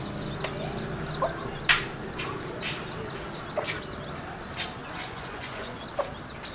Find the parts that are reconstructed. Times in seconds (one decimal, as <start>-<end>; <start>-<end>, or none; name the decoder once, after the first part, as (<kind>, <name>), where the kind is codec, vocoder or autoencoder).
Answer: 4.8-5.8 (vocoder, Vocos)